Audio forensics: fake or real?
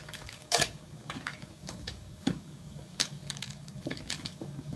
fake